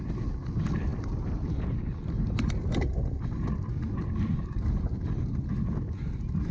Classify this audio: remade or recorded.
recorded